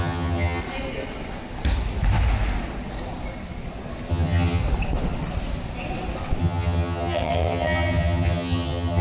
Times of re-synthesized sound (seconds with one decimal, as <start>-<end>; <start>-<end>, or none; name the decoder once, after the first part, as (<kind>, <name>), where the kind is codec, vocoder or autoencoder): 0.0-0.6 (vocoder, HiFi-GAN); 4.1-4.6; 6.4-9.0